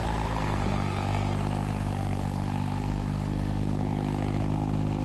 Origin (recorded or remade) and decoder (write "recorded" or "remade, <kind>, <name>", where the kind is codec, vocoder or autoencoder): remade, codec, SNAC